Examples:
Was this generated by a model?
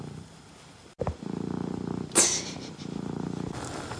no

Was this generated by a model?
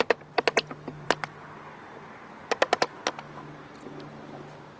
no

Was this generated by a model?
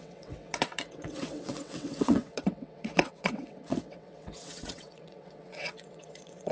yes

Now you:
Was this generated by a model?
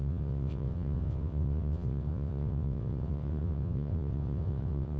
yes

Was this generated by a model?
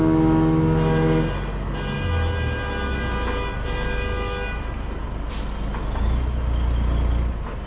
no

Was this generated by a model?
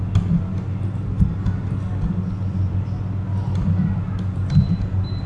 no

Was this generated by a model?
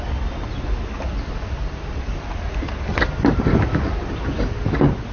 no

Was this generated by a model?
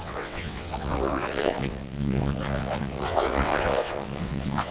yes